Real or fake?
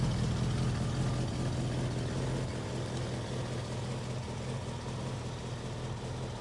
real